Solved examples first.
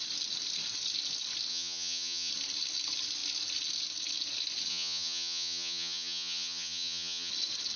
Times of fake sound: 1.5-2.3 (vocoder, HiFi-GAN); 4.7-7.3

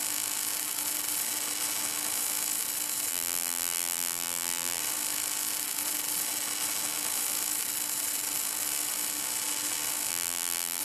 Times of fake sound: 3.1-4.8 (vocoder, BigVGAN v2); 10.1-10.8

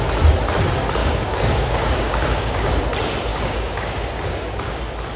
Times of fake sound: 1.0-2.8 (codec, DAC); 3.3-4.8

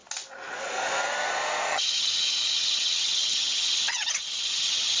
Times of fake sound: 1.7-5.0 (vocoder, HiFi-GAN)

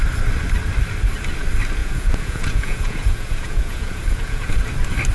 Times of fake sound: 1.8-4.5 (vocoder, Vocos)